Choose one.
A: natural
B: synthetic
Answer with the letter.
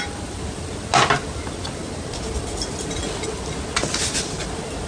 A